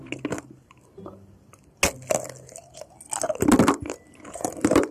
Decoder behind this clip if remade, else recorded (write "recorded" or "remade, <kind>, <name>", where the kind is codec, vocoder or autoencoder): recorded